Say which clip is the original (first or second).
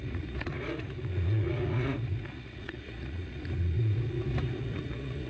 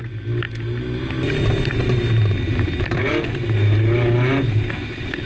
second